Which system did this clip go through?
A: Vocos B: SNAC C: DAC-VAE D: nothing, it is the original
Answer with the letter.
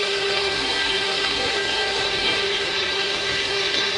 B